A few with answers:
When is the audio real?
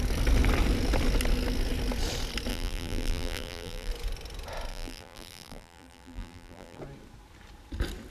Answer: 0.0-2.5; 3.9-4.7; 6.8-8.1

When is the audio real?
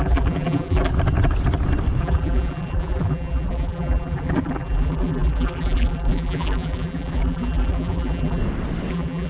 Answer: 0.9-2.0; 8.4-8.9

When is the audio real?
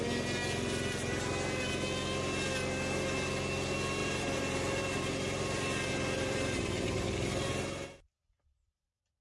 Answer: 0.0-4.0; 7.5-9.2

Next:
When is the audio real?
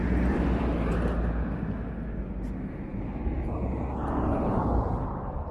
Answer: 0.7-5.5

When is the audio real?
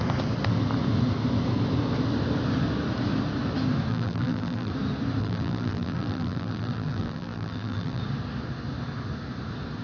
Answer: 0.0-3.9; 4.7-5.2; 8.0-9.8